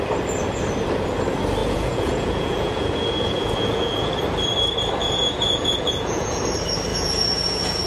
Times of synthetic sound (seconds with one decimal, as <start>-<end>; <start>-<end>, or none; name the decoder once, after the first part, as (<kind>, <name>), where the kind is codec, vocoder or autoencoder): 1.6-4.2 (vocoder, Vocos); 5.0-6.4; 6.9-7.9